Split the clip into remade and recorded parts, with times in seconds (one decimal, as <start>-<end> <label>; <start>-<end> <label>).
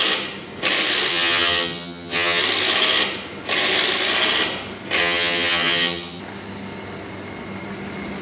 0.0-1.1 recorded; 1.1-2.4 remade; 2.4-5.0 recorded; 5.0-6.2 remade; 6.2-8.2 recorded